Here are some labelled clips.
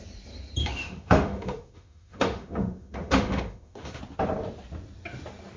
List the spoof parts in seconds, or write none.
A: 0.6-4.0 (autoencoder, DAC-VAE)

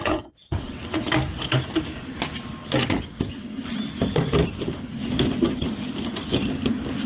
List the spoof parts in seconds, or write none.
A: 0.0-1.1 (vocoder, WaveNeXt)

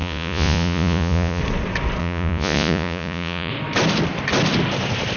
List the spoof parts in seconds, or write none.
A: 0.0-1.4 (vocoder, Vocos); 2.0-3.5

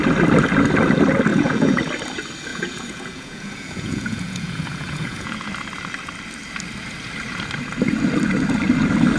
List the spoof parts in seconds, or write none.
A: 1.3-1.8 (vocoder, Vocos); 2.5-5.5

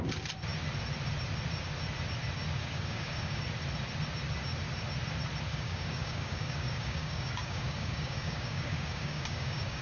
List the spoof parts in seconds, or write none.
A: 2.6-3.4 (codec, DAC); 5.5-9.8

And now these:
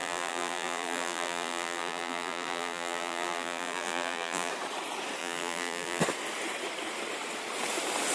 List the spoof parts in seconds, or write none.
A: 0.0-4.5 (vocoder, BigVGAN v2); 5.2-6.0

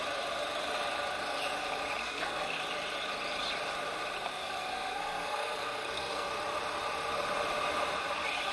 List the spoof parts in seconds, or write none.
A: 2.0-2.6 (codec, SNAC); 4.3-6.3